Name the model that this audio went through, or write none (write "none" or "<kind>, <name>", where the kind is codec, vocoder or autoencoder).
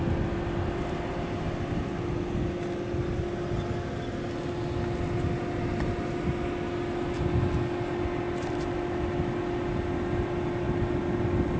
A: none